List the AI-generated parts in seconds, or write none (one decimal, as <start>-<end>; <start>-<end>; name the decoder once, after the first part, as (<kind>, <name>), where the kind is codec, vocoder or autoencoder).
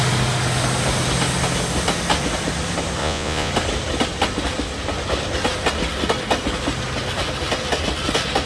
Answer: 3.0-3.5 (vocoder, Vocos)